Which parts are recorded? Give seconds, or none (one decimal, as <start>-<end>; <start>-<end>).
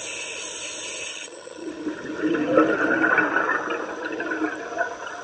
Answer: 0.0-1.1; 1.7-5.2